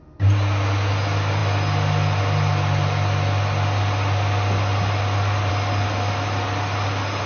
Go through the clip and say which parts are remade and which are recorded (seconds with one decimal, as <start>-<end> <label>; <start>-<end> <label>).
0.0-7.3 recorded

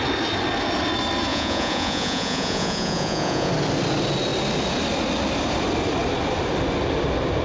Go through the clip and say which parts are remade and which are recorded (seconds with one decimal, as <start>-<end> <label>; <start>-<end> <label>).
0.0-1.3 recorded; 1.3-3.5 remade; 3.5-7.4 recorded

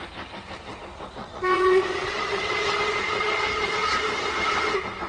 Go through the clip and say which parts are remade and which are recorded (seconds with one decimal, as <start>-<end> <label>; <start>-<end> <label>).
0.0-1.2 recorded; 1.2-4.1 remade; 4.1-5.1 recorded

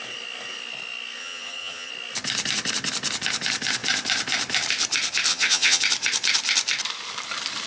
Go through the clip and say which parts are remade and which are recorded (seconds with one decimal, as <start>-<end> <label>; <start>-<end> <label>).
0.0-1.2 recorded; 1.2-1.9 remade; 1.9-5.3 recorded; 5.3-5.8 remade; 5.8-7.7 recorded